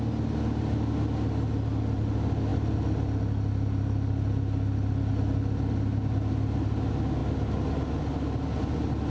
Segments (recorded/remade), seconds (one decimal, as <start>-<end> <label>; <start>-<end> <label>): 0.0-9.1 recorded